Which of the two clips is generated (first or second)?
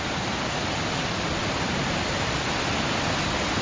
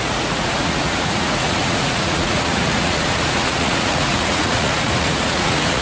second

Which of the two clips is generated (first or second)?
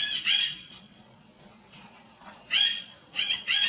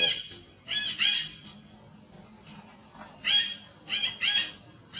first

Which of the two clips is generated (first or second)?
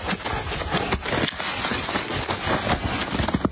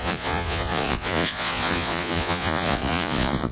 second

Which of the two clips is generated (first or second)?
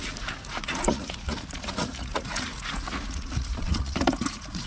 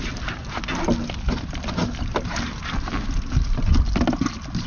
first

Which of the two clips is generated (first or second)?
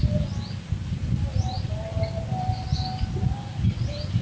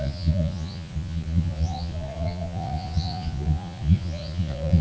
second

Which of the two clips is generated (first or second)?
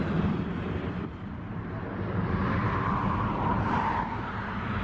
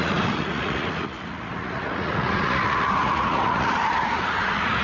second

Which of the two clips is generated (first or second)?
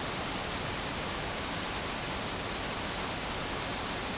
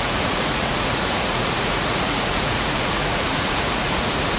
second